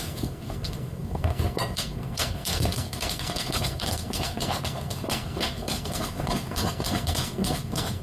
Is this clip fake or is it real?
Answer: fake